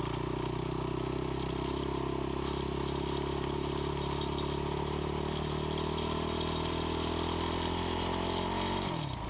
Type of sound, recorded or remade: recorded